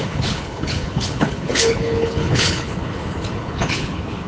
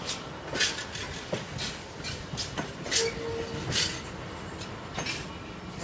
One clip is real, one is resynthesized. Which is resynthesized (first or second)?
first